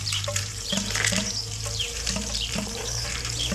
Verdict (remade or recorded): remade